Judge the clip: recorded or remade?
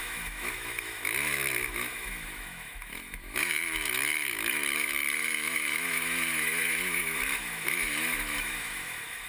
remade